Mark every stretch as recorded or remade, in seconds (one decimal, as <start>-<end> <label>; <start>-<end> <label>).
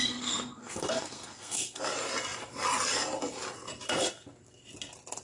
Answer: 0.0-1.8 remade; 1.8-5.2 recorded